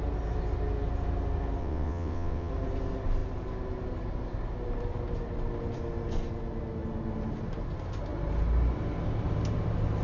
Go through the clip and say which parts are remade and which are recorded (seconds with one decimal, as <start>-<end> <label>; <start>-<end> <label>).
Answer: 0.0-1.6 recorded; 1.6-2.5 remade; 2.5-10.0 recorded